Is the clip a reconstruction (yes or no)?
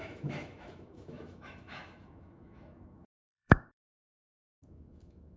yes